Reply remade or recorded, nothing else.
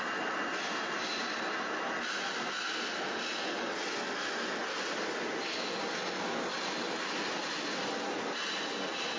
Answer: recorded